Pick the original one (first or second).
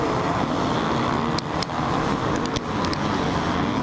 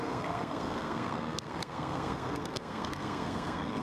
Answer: first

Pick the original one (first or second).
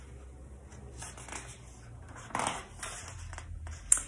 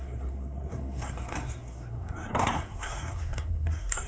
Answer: first